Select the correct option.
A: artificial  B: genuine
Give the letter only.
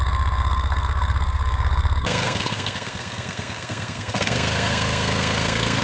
A